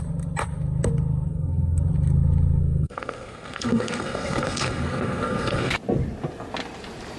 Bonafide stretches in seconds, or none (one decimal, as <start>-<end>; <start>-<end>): 0.0-1.3; 1.8-2.6; 5.7-7.2